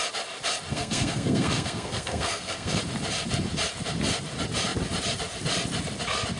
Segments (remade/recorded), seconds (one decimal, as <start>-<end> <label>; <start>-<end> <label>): 0.0-0.7 recorded; 0.7-2.8 remade; 2.8-6.4 recorded